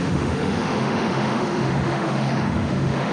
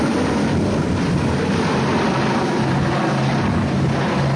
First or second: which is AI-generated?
first